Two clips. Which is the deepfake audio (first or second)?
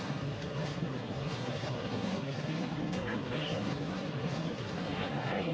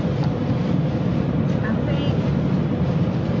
first